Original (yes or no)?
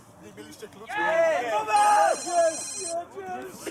yes